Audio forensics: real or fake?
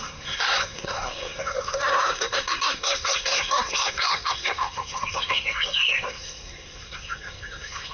fake